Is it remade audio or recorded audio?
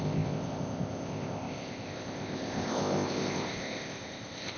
remade